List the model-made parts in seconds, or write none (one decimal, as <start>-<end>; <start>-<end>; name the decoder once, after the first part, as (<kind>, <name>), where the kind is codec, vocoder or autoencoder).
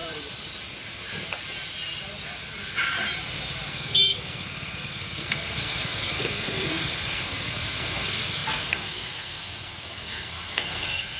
3.7-11.2 (codec, SNAC)